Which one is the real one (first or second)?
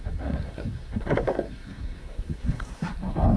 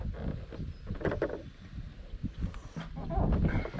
second